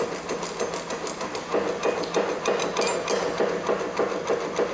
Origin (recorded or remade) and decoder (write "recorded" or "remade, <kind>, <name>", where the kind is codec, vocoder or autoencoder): recorded